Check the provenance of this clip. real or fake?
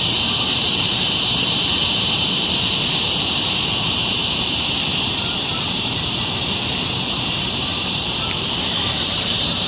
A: fake